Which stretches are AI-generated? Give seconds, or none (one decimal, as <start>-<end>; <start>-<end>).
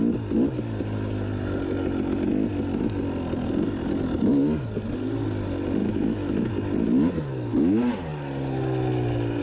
5.8-6.5